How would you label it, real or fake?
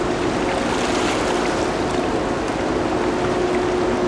real